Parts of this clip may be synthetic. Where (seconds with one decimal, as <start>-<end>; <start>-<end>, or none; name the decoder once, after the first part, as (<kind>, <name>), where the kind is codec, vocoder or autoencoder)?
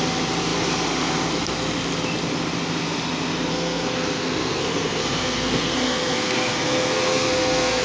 3.5-7.8 (codec, SNAC)